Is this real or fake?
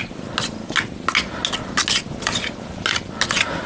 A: real